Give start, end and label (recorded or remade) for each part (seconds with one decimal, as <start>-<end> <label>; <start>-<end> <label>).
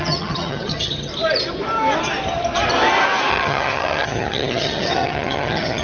0.0-1.1 remade; 1.1-3.3 recorded; 3.3-5.8 remade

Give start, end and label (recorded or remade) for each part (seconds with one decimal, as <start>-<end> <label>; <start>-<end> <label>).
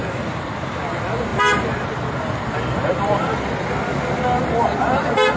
0.0-0.8 remade; 0.8-1.3 recorded; 1.3-1.9 remade; 1.9-5.4 recorded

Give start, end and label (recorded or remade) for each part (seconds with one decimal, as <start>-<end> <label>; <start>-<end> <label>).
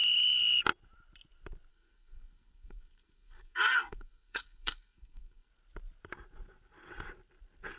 0.0-1.7 recorded; 1.7-5.5 remade; 5.5-7.8 recorded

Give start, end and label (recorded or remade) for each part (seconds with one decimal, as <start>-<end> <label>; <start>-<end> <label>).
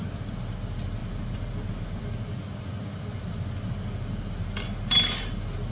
0.0-5.7 recorded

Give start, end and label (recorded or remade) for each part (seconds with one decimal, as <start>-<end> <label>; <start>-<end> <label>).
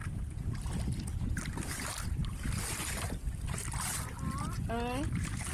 0.0-5.5 recorded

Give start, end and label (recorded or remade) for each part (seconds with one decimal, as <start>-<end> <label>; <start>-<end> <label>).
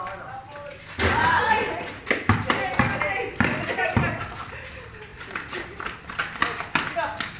0.0-7.4 recorded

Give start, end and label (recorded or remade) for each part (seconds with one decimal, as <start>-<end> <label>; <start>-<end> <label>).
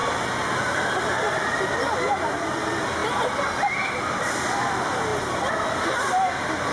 0.0-6.7 recorded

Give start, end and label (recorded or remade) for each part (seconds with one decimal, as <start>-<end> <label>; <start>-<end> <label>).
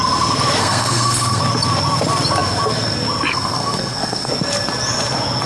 0.0-0.6 recorded; 0.6-1.4 remade; 1.4-3.3 recorded; 3.3-4.3 remade; 4.3-5.5 recorded